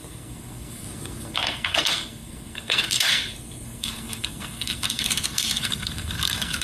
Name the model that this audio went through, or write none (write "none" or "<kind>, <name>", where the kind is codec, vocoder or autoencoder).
codec, SNAC